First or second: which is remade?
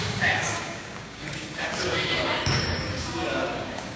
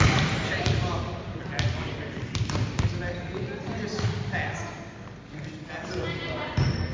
first